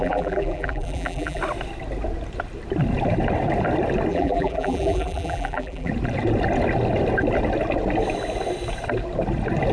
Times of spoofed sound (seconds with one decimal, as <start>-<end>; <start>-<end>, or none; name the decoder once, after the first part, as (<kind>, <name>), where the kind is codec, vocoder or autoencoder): 0.0-1.4 (vocoder, BigVGAN v2); 4.1-5.9